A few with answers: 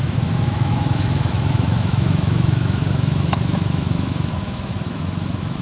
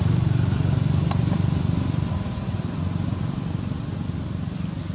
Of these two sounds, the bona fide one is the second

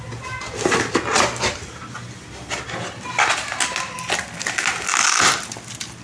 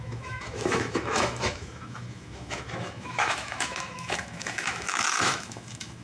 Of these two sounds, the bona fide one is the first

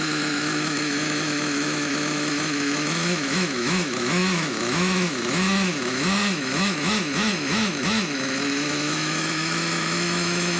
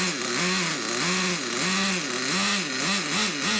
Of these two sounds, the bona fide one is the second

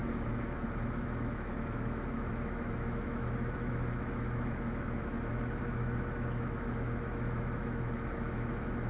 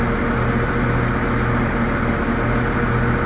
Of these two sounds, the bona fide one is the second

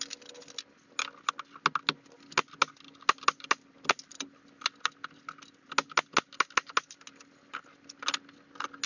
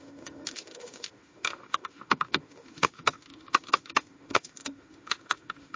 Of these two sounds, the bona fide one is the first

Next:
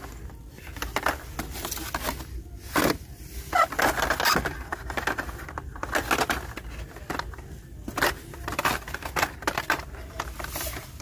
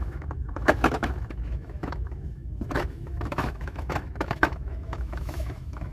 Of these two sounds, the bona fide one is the first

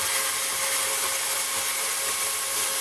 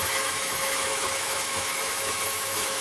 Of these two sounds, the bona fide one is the first